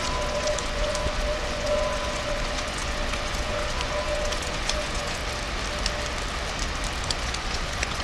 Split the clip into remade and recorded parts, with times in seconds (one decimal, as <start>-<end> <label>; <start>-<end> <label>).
0.0-5.2 remade; 5.2-7.0 recorded; 7.0-8.0 remade